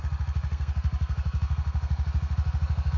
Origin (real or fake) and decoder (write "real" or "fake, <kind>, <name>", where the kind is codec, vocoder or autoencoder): fake, codec, SNAC